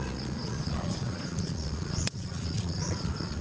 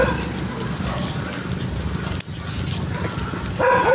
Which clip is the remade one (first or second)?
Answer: first